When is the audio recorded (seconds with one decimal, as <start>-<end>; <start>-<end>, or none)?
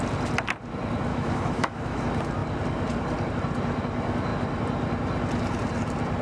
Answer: 0.0-1.1; 2.0-6.2